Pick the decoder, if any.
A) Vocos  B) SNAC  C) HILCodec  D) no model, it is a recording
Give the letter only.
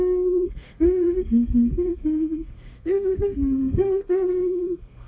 B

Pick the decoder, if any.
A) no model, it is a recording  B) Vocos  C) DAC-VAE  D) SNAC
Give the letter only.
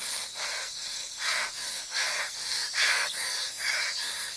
D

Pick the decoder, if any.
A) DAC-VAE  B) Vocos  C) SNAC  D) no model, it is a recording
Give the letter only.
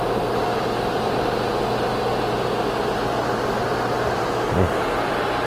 D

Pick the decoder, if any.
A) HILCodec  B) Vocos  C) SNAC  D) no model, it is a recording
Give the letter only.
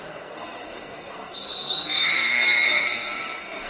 C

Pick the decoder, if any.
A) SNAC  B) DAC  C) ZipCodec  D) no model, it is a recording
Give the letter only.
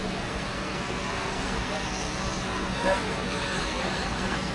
A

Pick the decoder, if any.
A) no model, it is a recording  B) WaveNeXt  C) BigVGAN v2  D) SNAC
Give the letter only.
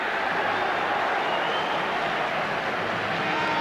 A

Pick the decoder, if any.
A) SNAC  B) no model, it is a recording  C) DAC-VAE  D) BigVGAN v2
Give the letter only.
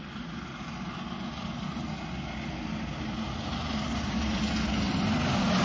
B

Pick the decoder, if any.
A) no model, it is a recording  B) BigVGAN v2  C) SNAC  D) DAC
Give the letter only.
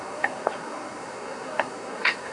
C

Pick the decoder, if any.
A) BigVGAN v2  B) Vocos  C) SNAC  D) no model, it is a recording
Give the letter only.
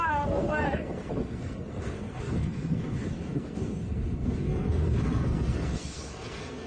C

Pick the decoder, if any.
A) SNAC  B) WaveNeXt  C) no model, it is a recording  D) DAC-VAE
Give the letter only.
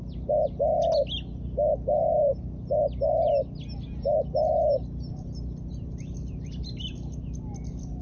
C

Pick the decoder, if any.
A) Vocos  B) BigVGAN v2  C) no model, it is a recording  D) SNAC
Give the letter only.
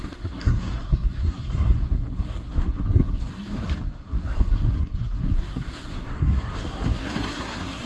D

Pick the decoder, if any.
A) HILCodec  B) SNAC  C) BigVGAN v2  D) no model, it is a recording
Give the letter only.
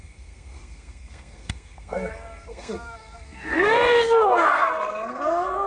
B